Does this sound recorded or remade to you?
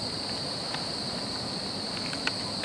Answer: recorded